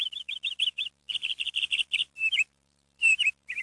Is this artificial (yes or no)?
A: yes